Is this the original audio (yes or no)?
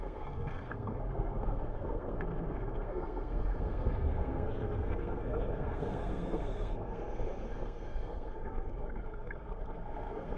no